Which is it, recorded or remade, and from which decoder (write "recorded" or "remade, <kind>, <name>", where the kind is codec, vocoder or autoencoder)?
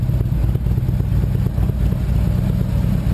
recorded